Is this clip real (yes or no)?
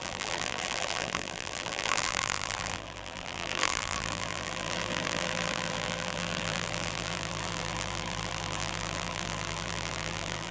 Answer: no